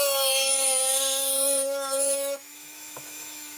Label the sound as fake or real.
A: fake